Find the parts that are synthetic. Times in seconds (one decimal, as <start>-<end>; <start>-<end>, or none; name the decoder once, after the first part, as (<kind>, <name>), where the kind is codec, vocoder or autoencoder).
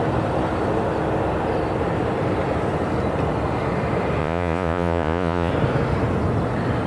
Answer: 4.2-5.5 (vocoder, Vocos)